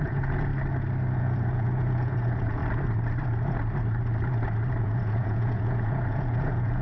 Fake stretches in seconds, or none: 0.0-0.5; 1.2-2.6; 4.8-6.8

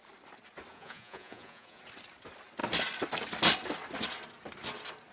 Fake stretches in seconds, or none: 0.7-1.8

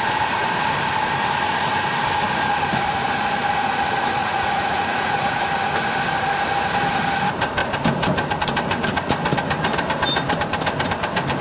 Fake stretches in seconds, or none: 4.2-5.4